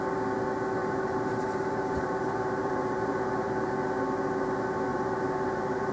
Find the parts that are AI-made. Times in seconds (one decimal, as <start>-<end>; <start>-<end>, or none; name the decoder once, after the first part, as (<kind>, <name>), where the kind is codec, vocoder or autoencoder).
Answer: 0.8-3.7 (vocoder, BigVGAN v2); 4.9-5.9